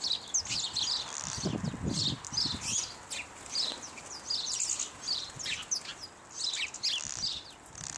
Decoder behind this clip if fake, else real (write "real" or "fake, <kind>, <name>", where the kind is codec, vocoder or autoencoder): real